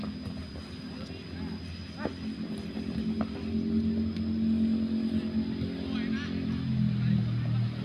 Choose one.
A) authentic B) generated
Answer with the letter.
A